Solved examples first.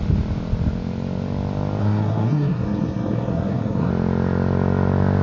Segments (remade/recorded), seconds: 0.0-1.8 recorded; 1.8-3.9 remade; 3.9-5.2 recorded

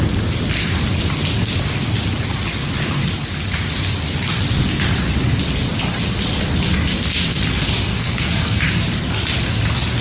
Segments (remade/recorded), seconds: 0.0-7.9 recorded; 7.9-8.6 remade; 8.6-10.0 recorded

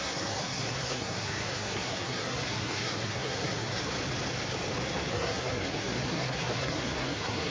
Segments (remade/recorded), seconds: 0.0-3.8 remade; 3.8-5.1 recorded; 5.1-7.5 remade

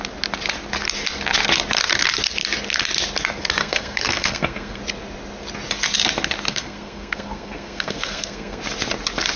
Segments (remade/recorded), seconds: 0.0-3.6 recorded; 3.6-4.8 remade; 4.8-6.5 recorded; 6.5-8.6 remade; 8.6-9.4 recorded

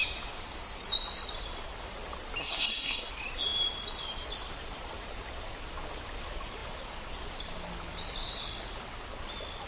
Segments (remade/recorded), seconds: 0.0-2.4 recorded; 2.4-3.1 remade; 3.1-9.7 recorded